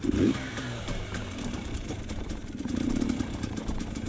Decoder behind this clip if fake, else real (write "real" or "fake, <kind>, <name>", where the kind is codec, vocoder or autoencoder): fake, vocoder, BigVGAN v2